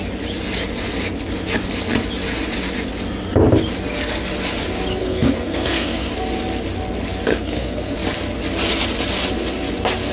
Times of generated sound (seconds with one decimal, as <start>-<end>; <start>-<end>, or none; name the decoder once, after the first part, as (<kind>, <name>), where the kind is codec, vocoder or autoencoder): 5.0-6.1 (codec, SNAC); 7.3-7.9